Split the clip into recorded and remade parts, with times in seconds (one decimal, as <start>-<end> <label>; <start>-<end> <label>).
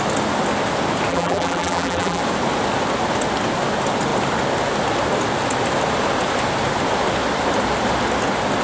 0.0-1.1 recorded; 1.1-2.2 remade; 2.2-8.6 recorded